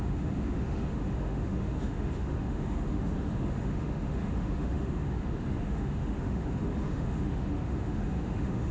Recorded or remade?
remade